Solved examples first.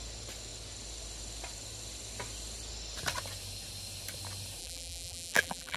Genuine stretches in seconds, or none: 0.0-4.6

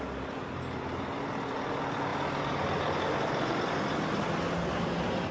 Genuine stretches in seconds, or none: 0.0-5.3

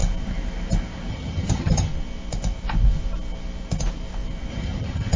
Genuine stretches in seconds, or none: 0.0-1.1; 1.9-4.5